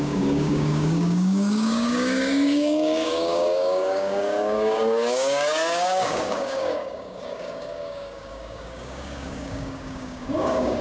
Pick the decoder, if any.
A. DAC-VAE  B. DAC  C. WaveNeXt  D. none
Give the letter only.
B